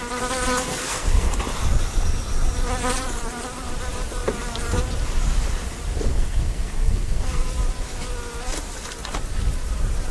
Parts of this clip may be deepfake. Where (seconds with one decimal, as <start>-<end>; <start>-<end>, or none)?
0.7-1.3; 6.1-7.4